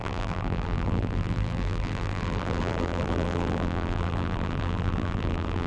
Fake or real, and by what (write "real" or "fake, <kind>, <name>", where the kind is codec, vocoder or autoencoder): fake, vocoder, BigVGAN v2